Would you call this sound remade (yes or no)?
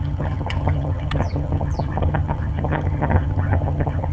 yes